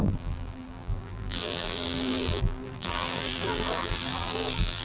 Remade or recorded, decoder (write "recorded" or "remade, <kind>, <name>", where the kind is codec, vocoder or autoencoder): remade, vocoder, BigVGAN v2